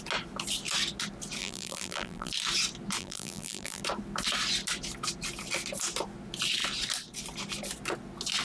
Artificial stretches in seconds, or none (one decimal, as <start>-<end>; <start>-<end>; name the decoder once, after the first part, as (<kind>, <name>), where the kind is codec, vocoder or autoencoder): 1.4-2.3 (vocoder, BigVGAN v2); 3.0-3.8